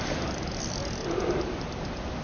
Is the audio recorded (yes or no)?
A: no